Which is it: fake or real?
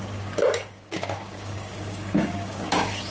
fake